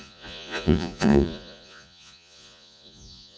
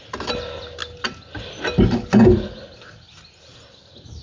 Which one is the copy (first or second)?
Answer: first